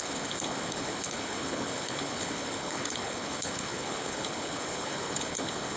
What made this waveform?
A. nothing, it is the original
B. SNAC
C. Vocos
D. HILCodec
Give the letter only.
D